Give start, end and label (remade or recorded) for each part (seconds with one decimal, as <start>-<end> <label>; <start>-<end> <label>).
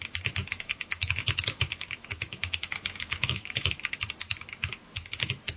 0.0-0.4 recorded; 0.4-3.7 remade; 3.7-5.6 recorded